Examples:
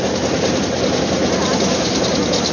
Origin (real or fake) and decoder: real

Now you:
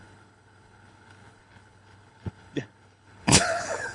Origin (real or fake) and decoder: fake, codec, HILCodec